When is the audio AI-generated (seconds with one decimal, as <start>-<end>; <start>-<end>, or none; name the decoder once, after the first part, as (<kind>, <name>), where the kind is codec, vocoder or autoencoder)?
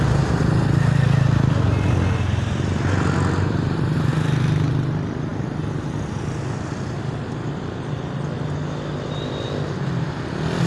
none